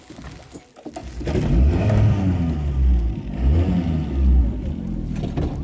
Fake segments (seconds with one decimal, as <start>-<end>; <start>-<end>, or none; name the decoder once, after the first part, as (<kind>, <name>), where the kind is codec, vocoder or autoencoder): none